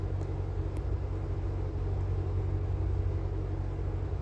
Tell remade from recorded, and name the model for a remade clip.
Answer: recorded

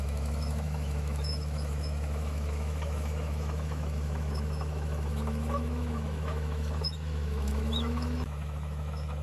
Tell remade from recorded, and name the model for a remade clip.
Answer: remade, autoencoder, DAC-VAE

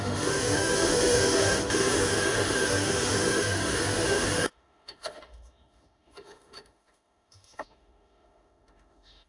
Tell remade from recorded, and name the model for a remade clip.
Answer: remade, autoencoder, DAC-VAE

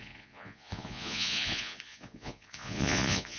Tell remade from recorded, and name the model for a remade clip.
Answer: remade, vocoder, Vocos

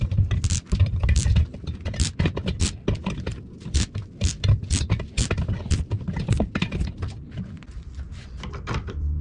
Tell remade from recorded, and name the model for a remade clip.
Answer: recorded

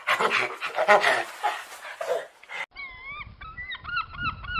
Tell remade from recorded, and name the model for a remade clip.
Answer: recorded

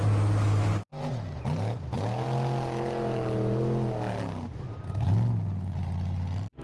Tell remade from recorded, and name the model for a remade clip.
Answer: recorded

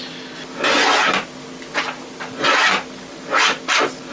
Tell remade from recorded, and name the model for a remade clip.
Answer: recorded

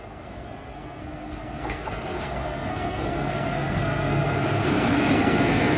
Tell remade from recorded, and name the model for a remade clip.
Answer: remade, codec, SNAC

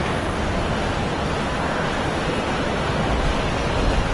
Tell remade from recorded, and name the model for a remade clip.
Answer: recorded